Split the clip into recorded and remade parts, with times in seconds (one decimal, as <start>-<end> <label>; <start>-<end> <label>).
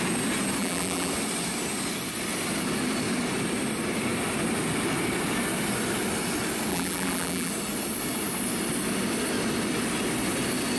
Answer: 0.0-0.6 recorded; 0.6-1.1 remade; 1.1-6.7 recorded; 6.7-7.5 remade; 7.5-10.8 recorded